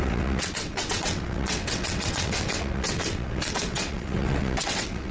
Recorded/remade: remade